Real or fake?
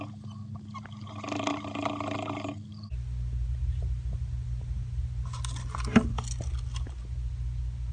real